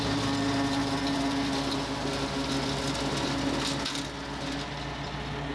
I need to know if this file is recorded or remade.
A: recorded